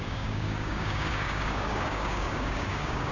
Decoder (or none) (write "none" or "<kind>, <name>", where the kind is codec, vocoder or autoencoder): codec, DAC